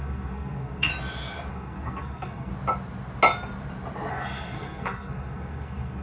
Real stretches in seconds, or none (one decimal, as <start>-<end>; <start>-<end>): 0.9-1.5; 2.5-4.1